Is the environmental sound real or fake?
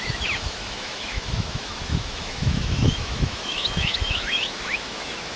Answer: fake